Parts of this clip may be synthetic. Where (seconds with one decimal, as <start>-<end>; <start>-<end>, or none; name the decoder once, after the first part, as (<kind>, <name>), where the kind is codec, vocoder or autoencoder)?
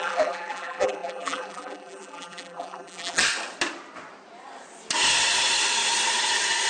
0.0-3.2 (vocoder, BigVGAN v2)